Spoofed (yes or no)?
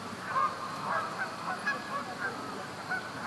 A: no